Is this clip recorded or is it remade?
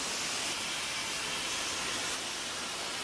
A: recorded